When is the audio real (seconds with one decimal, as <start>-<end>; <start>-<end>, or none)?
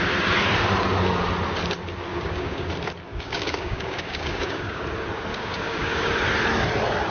0.0-2.1; 2.7-3.1; 4.8-5.3; 6.1-7.1